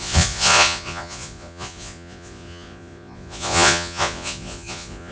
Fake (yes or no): yes